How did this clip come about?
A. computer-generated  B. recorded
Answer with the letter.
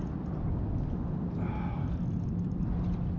B